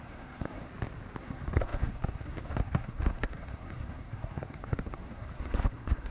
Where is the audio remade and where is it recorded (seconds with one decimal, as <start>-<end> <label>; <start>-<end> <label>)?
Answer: 0.0-0.7 remade; 0.7-1.2 recorded; 1.2-6.1 remade